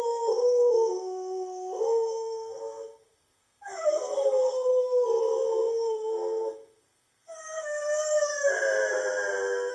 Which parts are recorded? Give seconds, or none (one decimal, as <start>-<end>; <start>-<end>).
4.7-5.2; 8.3-9.7